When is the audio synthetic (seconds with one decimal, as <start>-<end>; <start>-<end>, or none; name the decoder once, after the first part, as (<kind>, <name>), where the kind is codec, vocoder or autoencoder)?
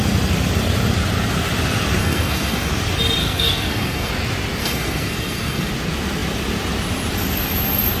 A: 2.0-2.7 (codec, SNAC); 3.2-4.1; 4.6-5.7